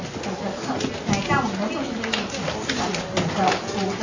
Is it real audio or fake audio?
real